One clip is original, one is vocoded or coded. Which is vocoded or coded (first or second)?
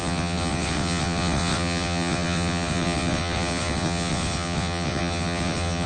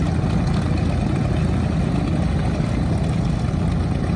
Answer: first